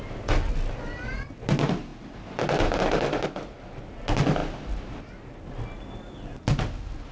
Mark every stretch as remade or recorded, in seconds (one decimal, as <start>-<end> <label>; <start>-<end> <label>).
0.0-7.1 recorded